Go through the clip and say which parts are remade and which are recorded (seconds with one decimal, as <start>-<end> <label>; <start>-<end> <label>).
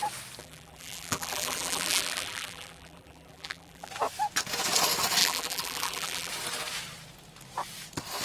0.0-0.4 recorded; 0.4-3.9 remade; 3.9-5.2 recorded; 5.2-6.3 remade; 6.3-8.2 recorded